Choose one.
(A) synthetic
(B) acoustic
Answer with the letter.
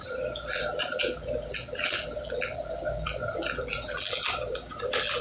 A